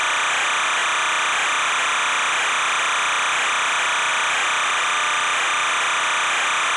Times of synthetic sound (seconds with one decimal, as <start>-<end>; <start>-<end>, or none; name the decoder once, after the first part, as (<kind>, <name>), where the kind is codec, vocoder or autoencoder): none